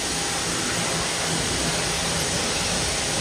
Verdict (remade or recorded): recorded